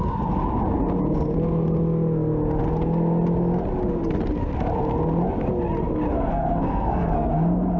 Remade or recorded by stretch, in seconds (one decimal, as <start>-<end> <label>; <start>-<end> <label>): 0.0-6.3 recorded; 6.3-7.3 remade; 7.3-7.8 recorded